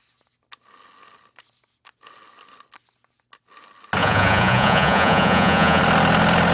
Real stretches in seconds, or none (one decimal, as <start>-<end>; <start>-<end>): 0.0-4.0; 5.8-6.5